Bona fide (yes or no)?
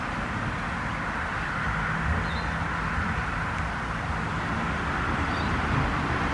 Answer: no